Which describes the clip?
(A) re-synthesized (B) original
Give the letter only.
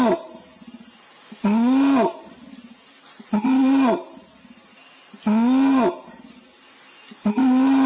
B